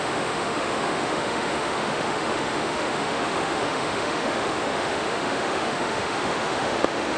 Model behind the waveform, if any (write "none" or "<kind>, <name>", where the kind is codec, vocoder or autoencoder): autoencoder, DAC-VAE